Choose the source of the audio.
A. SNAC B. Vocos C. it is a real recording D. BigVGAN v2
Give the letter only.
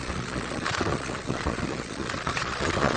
B